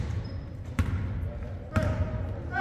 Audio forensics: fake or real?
real